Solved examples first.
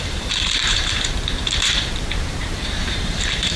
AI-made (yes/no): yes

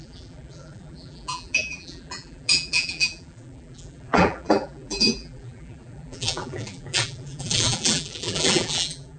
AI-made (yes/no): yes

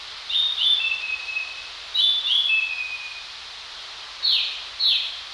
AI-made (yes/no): no